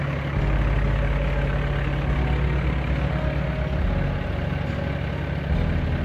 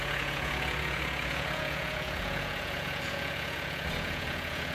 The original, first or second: first